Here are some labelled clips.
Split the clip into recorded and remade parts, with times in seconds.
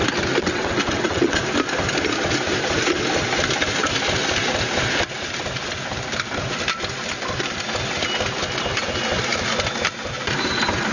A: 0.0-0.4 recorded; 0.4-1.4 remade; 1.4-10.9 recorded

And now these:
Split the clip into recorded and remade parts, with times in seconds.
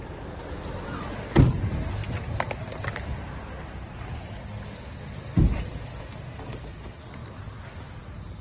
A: 0.0-2.0 recorded; 2.0-2.7 remade; 2.7-8.4 recorded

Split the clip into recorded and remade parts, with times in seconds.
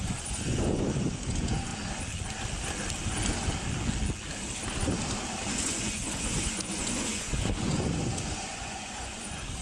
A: 0.0-1.7 remade; 1.7-5.5 recorded; 5.5-9.6 remade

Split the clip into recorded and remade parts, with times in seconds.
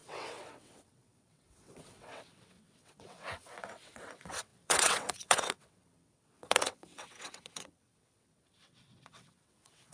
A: 0.0-9.9 remade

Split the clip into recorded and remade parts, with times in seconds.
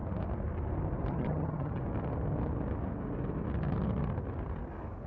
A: 0.0-1.1 recorded; 1.1-1.8 remade; 1.8-5.1 recorded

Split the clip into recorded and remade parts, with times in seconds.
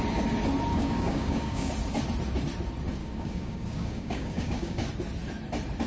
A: 0.0-0.7 recorded; 0.7-1.7 remade; 1.7-3.0 recorded; 3.0-4.9 remade; 4.9-5.9 recorded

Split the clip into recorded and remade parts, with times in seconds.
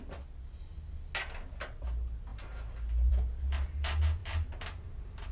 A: 0.0-5.3 recorded